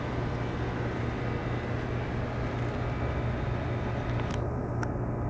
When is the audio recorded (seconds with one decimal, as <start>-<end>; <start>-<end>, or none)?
0.0-5.3